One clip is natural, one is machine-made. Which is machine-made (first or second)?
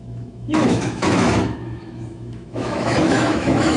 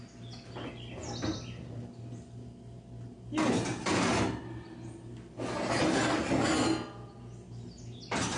first